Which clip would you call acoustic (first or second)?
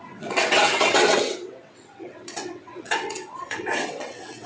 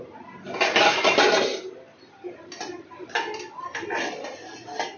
second